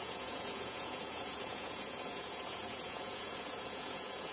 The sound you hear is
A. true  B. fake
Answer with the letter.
B